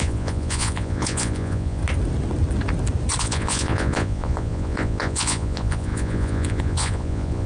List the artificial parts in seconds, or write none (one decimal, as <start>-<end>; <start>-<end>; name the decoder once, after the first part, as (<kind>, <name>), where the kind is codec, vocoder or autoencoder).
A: 0.0-1.8 (vocoder, Vocos); 3.2-7.5